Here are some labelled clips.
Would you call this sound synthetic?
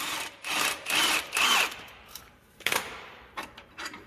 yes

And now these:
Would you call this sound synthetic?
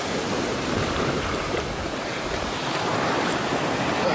yes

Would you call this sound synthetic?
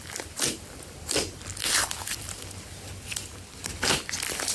yes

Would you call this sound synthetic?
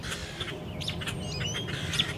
no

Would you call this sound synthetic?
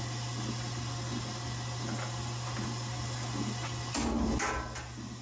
no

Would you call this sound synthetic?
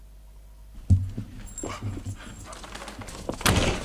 no